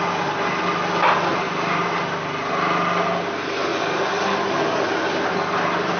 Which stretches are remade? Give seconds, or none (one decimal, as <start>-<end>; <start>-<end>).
1.3-2.0; 3.7-4.2